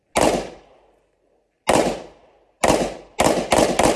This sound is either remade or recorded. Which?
recorded